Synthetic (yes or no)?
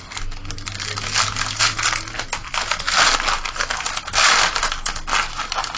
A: no